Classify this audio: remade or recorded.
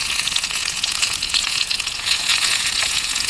remade